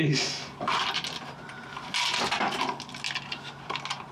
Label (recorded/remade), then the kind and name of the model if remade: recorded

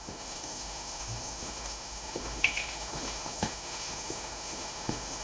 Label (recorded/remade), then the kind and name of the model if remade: remade, autoencoder, DAC-VAE